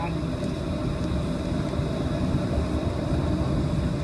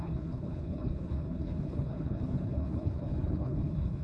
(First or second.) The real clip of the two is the first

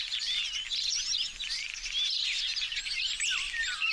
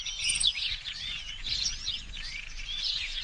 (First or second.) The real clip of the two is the first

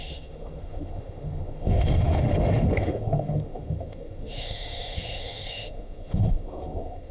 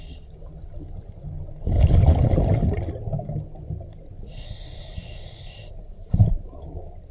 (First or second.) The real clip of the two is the second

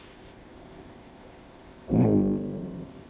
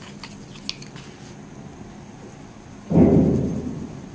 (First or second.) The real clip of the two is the second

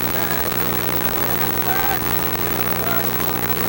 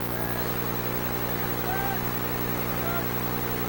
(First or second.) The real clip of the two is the second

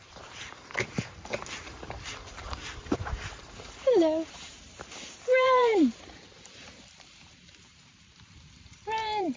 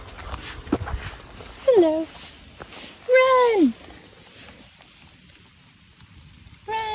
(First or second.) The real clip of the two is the second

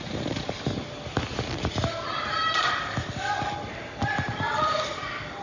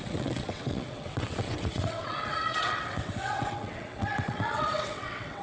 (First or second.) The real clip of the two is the first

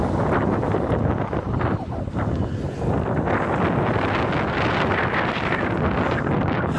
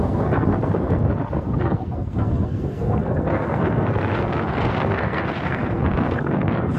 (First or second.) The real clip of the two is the first